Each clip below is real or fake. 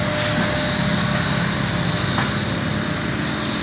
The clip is real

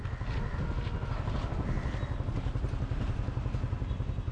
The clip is real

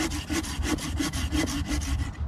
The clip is real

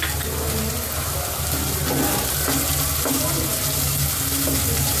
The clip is real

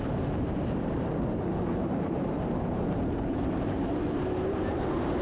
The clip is fake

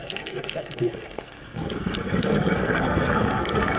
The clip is fake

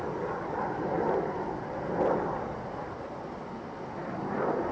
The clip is real